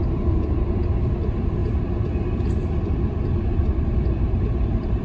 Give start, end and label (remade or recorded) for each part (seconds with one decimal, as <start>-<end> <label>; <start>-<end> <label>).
0.0-5.0 remade